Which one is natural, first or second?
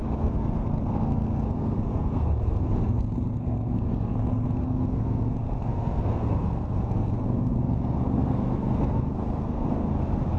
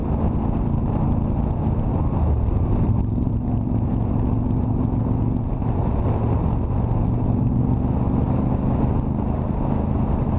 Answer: second